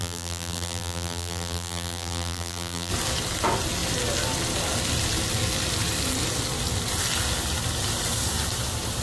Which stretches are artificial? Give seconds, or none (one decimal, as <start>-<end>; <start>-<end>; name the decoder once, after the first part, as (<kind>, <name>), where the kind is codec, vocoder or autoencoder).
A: 0.0-2.9 (vocoder, BigVGAN v2)